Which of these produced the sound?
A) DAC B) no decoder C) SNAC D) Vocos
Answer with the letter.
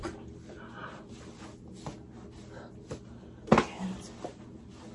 B